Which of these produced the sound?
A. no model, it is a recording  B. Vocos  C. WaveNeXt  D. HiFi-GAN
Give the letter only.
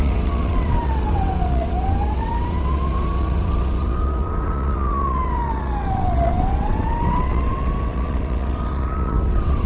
C